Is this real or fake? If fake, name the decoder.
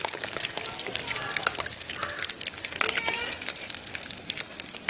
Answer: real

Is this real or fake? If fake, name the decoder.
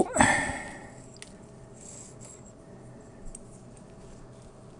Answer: real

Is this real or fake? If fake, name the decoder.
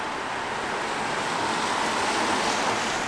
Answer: real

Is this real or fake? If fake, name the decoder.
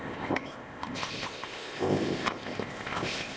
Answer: fake, codec, ZipCodec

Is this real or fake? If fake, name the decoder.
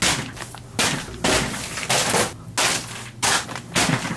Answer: real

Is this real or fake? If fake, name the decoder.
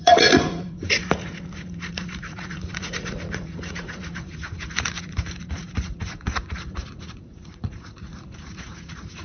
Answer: fake, vocoder, Vocos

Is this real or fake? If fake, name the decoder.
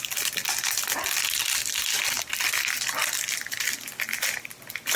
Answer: real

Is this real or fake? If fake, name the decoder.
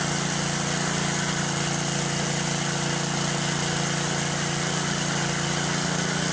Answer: real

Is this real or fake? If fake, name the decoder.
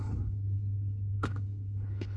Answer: fake, codec, HILCodec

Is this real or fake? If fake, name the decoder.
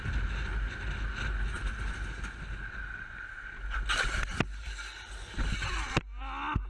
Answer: real